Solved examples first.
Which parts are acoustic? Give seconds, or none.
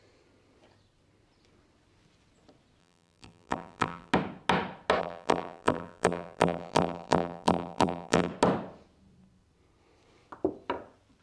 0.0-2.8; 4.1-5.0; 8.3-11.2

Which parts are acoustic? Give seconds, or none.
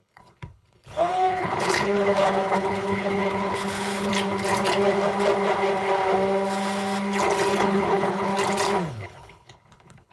4.1-7.6; 8.3-8.9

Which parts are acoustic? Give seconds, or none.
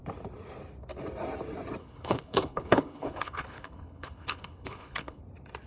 0.0-1.8; 5.2-5.7